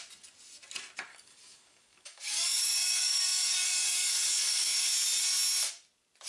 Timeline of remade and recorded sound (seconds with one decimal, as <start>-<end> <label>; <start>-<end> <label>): 0.0-1.1 recorded; 1.1-4.9 remade; 4.9-6.3 recorded